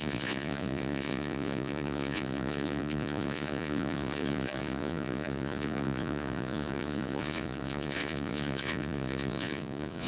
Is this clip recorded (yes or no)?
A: no